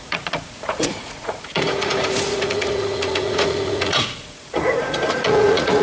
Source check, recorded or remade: remade